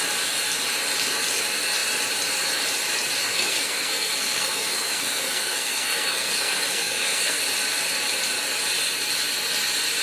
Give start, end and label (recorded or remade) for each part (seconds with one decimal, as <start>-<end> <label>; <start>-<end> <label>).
0.0-3.2 recorded; 3.2-7.4 remade; 7.4-10.0 recorded